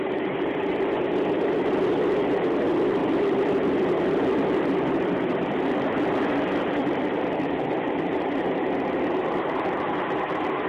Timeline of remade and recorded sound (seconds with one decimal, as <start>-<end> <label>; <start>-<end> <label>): 0.0-3.0 recorded; 3.0-6.2 remade; 6.2-10.7 recorded